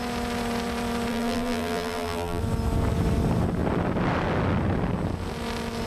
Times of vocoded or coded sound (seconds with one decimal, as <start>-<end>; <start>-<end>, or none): 1.1-2.4